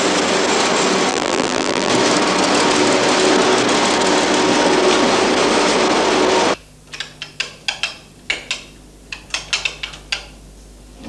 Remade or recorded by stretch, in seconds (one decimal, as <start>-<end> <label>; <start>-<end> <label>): 0.0-1.1 recorded; 1.1-1.9 remade; 1.9-11.1 recorded